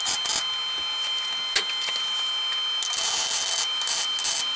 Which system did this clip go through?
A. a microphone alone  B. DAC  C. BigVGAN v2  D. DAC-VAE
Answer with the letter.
A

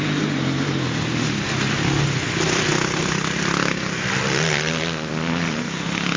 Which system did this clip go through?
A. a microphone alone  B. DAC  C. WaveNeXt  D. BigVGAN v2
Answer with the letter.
A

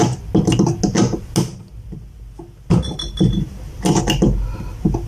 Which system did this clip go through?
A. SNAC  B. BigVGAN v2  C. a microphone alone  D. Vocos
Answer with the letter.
C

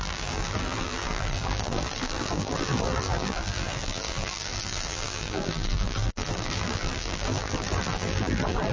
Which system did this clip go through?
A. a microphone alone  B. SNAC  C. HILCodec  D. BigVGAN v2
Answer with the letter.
D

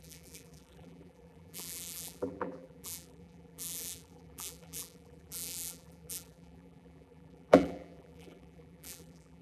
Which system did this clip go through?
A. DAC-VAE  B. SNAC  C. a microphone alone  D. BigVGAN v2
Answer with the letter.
D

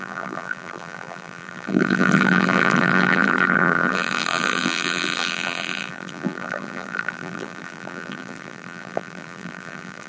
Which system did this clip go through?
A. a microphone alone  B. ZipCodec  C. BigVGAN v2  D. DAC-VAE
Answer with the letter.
C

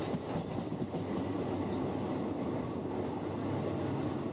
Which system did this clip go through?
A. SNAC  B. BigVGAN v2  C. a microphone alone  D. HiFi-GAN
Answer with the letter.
C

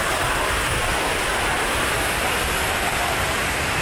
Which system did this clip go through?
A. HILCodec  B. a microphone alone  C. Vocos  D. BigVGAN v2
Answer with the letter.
B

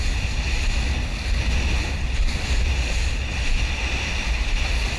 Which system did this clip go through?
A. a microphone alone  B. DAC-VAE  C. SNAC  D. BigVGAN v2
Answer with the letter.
A